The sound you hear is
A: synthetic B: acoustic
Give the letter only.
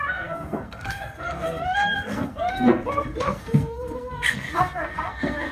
A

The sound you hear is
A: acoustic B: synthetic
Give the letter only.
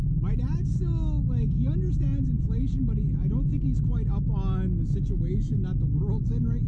A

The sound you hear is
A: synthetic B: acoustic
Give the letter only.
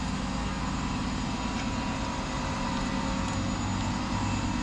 B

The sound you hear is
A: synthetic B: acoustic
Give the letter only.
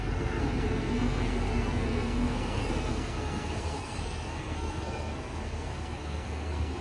A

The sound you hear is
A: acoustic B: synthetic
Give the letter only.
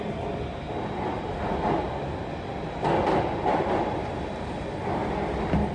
A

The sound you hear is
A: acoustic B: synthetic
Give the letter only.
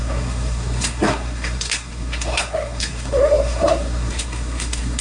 B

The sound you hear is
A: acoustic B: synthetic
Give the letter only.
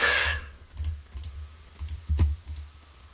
A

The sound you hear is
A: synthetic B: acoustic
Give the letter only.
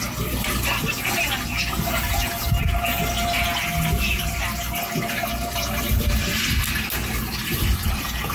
B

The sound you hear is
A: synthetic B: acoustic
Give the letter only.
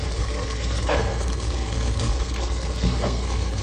A